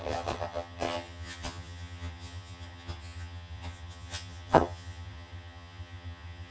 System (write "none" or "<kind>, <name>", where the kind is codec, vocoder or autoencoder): vocoder, HiFi-GAN